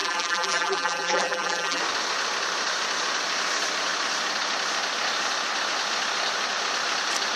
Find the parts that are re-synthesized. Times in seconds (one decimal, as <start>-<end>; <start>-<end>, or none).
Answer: 0.0-1.8